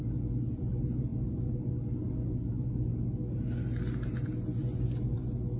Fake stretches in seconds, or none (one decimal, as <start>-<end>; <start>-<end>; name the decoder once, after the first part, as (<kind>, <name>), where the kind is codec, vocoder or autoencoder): 1.1-1.7 (vocoder, BigVGAN v2)